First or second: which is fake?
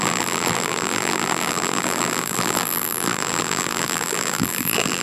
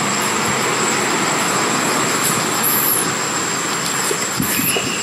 first